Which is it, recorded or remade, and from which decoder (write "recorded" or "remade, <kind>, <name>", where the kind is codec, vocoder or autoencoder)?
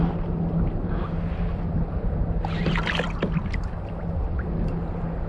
recorded